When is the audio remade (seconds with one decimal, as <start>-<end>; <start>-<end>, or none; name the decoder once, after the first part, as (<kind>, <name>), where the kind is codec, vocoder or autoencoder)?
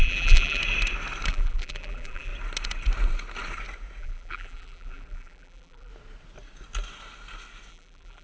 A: 0.0-0.6 (vocoder, BigVGAN v2); 1.3-2.3; 4.0-5.9; 7.7-8.2